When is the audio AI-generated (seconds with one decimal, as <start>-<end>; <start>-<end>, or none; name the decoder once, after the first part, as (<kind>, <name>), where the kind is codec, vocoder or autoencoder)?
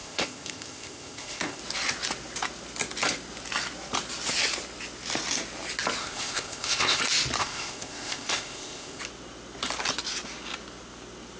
0.0-1.6 (codec, ZipCodec); 6.0-7.0; 7.4-9.0